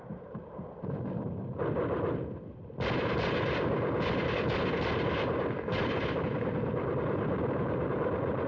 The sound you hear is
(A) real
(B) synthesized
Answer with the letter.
A